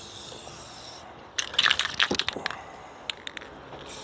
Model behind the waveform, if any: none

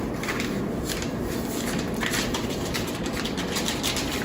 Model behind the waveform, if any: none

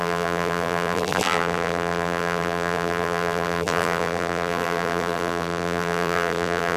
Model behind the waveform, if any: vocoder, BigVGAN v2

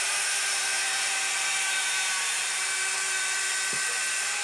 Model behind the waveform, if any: vocoder, BigVGAN v2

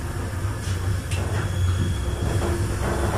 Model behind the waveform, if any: none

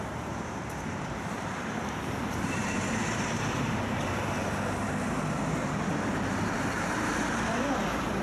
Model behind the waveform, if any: vocoder, BigVGAN v2